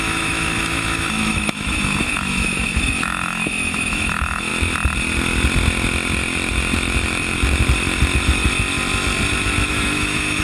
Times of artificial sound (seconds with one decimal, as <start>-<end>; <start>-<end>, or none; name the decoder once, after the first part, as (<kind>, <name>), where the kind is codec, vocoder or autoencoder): 0.0-4.5 (autoencoder, DAC-VAE); 9.7-10.4